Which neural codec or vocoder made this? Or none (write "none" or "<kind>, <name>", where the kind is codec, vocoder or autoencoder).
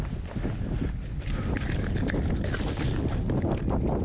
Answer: none